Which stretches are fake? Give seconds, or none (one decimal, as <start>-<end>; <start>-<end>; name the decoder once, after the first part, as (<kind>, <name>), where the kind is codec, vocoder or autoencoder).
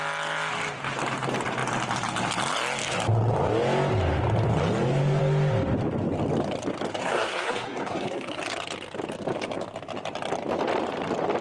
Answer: 7.0-8.4 (codec, SNAC)